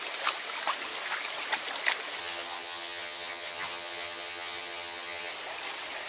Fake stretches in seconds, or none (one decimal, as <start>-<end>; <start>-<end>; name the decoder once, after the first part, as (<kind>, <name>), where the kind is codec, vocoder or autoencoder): 2.2-5.3 (vocoder, HiFi-GAN)